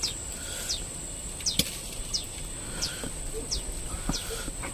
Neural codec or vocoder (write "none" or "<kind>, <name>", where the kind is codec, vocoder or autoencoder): none